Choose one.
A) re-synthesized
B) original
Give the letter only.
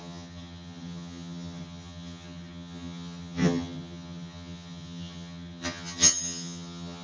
A